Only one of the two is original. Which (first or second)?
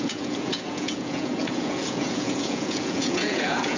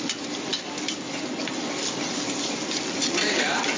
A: second